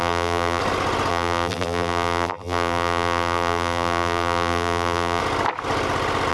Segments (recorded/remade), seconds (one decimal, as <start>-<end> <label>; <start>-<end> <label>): 0.0-0.6 remade; 0.6-1.1 recorded; 1.1-5.2 remade; 5.2-6.3 recorded